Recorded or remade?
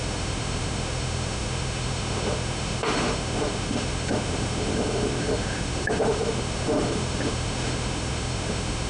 remade